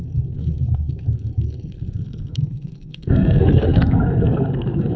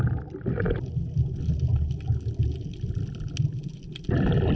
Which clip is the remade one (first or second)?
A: first